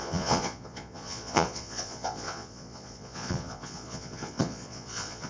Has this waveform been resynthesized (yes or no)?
yes